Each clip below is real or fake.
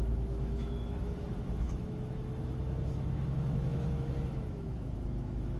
fake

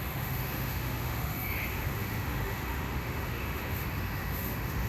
fake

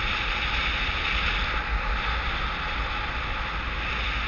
real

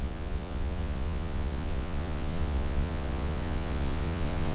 fake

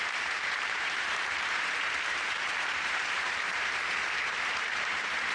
fake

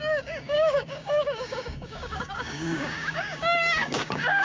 fake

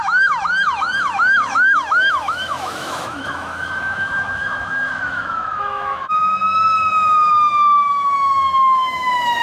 fake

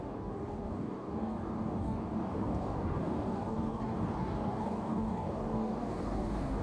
fake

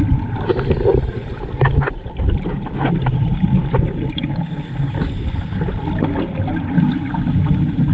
real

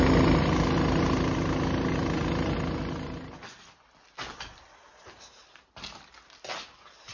real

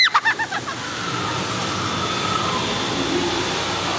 real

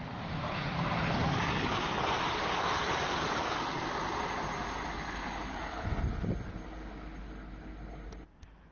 real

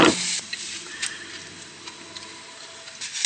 real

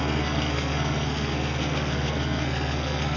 fake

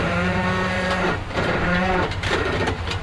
fake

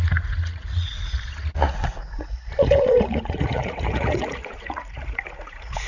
fake